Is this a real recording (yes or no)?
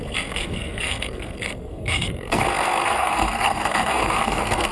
no